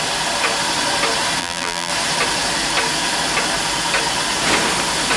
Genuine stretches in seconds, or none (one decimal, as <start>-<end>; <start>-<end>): 0.0-1.4; 1.9-5.2